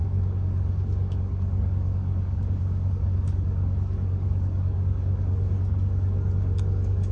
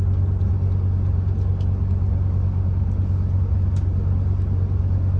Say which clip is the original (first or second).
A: second